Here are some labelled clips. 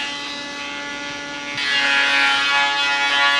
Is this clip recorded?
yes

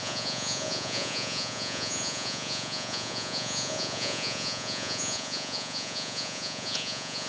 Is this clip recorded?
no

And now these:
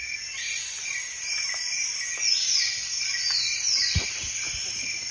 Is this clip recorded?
yes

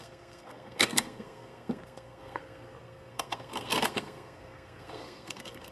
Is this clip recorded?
no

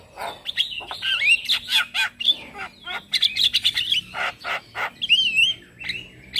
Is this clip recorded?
yes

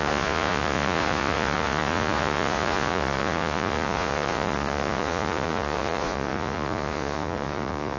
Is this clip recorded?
no